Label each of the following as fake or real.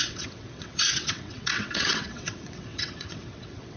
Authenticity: fake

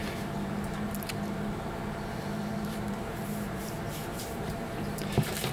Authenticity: fake